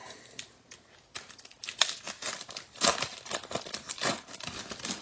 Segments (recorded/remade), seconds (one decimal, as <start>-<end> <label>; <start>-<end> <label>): 0.0-5.0 recorded